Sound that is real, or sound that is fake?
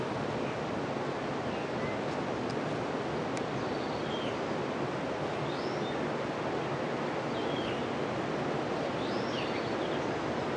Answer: real